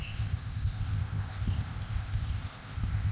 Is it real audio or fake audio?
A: fake